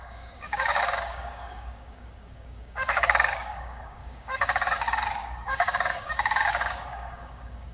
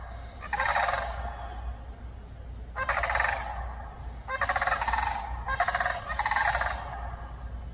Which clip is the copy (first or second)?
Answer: first